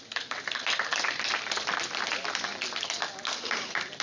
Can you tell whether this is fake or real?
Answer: real